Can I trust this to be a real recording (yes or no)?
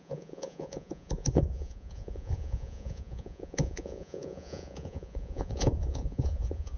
no